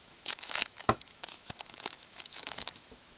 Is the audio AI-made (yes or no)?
yes